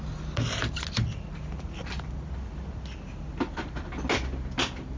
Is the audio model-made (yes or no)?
no